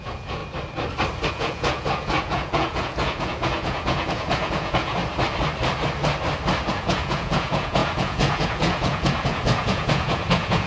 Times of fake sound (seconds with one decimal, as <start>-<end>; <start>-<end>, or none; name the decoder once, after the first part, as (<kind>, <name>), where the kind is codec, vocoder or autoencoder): 0.0-0.4 (vocoder, Vocos); 1.3-5.0; 6.7-10.7